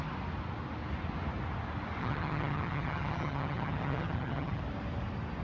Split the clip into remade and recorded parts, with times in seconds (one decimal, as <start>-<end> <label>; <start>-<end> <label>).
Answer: 0.0-2.0 recorded; 2.0-4.6 remade; 4.6-5.4 recorded